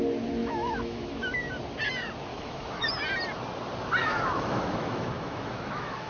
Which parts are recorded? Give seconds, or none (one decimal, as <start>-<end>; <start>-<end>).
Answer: 0.0-0.4; 1.5-2.3; 2.9-4.0